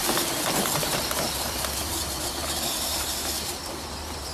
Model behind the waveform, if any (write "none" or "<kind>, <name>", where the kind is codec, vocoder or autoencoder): vocoder, BigVGAN v2